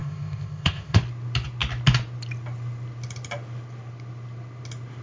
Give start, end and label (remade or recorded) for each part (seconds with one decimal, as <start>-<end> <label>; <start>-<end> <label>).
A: 0.0-1.0 remade; 1.0-5.0 recorded